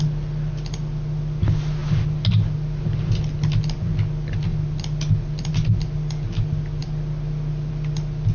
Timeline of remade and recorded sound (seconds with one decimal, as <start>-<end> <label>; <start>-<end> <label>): 0.0-8.3 recorded